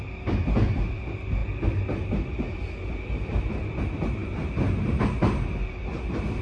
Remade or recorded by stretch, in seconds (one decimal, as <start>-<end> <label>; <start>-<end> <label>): 0.0-6.4 recorded